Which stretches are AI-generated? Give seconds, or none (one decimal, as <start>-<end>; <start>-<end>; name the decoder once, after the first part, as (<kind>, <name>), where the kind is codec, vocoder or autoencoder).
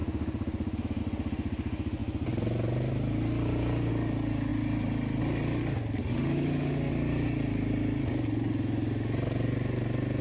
6.0-6.9 (autoencoder, DAC-VAE)